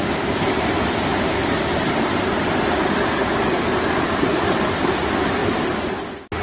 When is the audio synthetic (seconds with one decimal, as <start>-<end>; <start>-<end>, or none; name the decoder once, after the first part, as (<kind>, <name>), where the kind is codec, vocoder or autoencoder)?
1.1-2.0 (vocoder, BigVGAN v2); 5.4-5.9

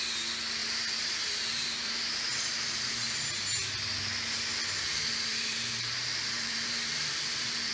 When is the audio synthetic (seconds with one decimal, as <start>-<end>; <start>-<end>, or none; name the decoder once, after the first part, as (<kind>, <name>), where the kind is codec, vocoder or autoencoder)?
0.6-2.9 (vocoder, BigVGAN v2); 5.1-7.7

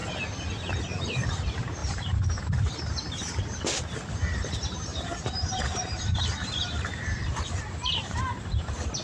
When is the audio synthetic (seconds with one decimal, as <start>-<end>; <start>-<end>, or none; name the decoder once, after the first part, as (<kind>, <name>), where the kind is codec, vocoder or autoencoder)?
1.8-2.4 (vocoder, BigVGAN v2); 4.9-9.0

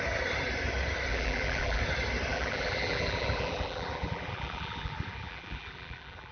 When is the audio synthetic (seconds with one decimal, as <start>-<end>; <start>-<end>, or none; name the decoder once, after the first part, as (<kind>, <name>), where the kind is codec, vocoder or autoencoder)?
1.1-1.8 (vocoder, BigVGAN v2); 2.3-6.3

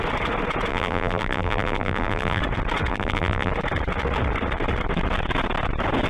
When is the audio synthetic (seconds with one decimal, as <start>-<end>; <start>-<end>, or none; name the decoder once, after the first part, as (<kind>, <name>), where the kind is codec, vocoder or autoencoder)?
0.7-2.4 (vocoder, BigVGAN v2); 2.9-3.5